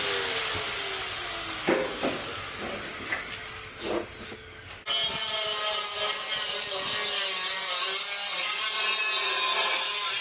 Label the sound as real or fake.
real